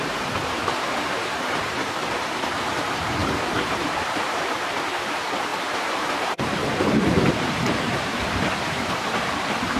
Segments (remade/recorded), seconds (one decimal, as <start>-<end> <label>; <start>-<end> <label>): 0.0-9.8 remade